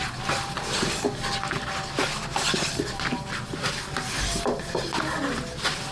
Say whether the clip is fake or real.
real